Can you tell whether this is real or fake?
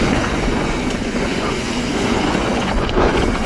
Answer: fake